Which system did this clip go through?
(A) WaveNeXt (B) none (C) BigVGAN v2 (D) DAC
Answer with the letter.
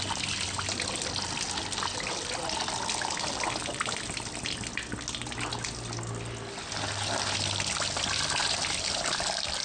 B